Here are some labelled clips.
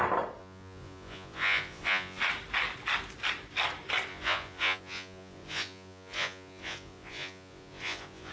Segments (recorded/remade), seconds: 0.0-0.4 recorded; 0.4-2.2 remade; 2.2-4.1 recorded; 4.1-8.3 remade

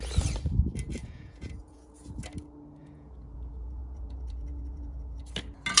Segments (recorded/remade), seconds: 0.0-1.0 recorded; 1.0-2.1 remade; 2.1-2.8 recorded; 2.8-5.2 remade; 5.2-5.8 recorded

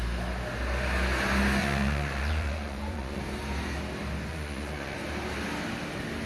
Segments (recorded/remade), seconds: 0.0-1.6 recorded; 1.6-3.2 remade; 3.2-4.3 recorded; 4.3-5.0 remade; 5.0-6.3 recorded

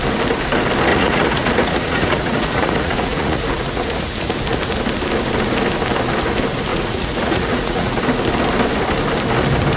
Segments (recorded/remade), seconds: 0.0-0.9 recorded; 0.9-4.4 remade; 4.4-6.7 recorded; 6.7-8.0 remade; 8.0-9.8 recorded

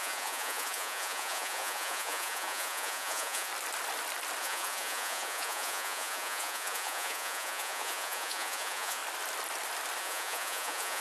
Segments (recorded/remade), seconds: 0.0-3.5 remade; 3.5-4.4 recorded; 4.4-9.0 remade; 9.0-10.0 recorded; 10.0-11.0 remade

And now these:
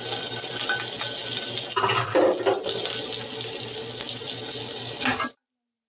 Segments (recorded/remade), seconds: 0.0-5.9 recorded

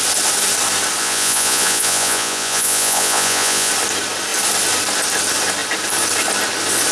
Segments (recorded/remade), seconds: 0.0-1.0 recorded; 1.0-3.7 remade; 3.7-6.9 recorded